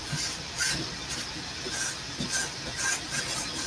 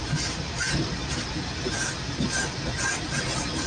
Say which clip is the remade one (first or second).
second